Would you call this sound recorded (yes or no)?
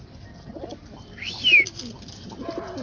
yes